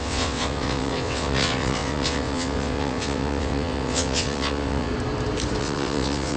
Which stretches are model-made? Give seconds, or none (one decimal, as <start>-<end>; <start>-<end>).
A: 0.0-4.9; 5.6-6.4